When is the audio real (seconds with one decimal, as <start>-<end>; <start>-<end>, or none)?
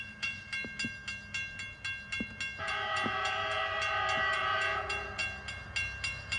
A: 0.5-2.6; 3.6-4.3; 5.2-6.4